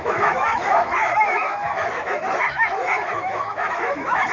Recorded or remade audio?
remade